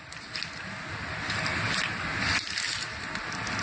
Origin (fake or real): real